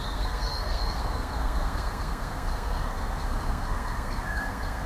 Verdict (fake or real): fake